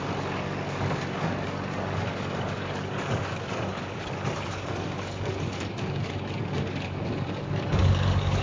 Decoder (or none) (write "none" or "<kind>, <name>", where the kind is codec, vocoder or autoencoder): codec, DAC